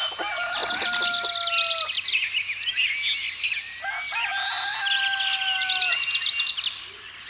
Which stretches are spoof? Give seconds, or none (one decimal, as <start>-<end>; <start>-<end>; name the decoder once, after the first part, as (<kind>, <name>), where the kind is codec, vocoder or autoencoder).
none